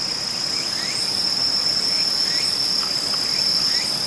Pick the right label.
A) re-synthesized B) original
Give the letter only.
B